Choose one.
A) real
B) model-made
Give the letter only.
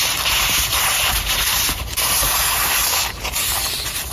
B